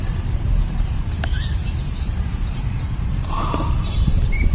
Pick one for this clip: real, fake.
fake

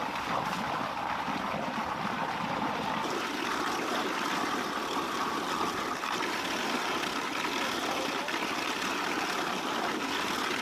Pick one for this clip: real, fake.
real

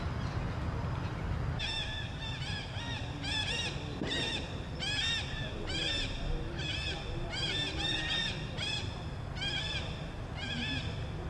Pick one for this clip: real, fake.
real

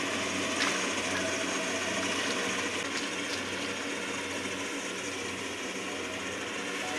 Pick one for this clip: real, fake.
real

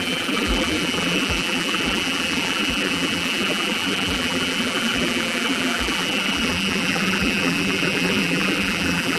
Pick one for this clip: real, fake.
fake